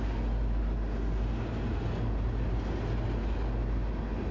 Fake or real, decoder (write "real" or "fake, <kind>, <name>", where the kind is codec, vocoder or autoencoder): real